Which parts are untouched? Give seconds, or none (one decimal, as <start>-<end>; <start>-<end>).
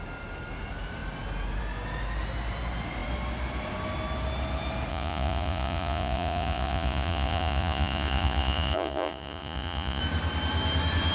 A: 0.0-4.9; 10.0-11.1